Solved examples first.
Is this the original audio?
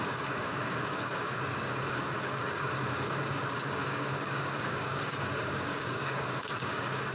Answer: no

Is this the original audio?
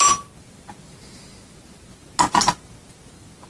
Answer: yes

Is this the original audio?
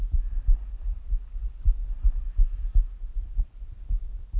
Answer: yes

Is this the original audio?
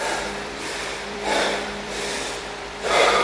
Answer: no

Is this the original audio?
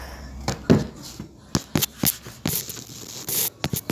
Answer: yes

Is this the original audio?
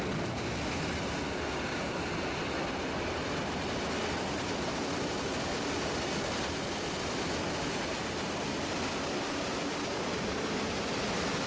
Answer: yes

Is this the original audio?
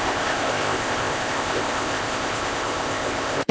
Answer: no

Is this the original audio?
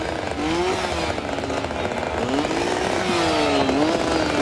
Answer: yes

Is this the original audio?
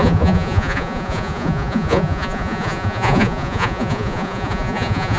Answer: no